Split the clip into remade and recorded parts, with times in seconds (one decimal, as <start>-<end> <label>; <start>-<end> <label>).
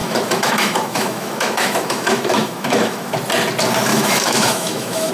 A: 0.0-3.1 remade; 3.1-3.9 recorded; 3.9-5.1 remade